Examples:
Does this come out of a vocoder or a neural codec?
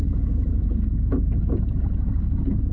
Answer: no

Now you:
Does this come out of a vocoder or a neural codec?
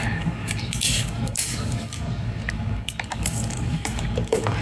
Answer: yes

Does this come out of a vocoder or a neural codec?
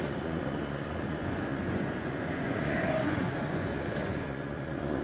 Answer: yes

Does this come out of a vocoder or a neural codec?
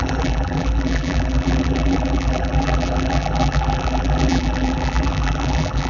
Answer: yes